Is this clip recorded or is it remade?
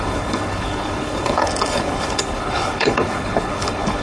remade